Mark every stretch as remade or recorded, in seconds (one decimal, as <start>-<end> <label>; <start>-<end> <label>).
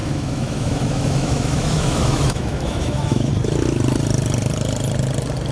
0.0-3.3 remade; 3.3-5.5 recorded